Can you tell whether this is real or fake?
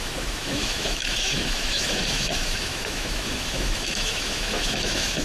fake